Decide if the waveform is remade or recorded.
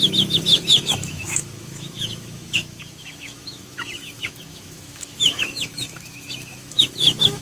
remade